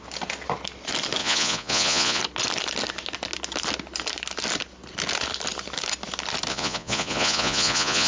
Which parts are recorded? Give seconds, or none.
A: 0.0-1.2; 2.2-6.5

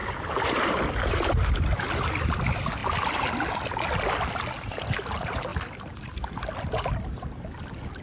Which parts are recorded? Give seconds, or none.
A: 0.0-8.0

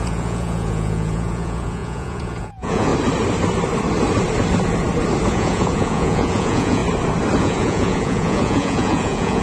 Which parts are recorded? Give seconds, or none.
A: 2.9-5.3; 6.8-7.4